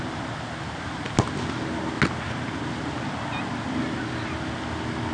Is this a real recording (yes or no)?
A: yes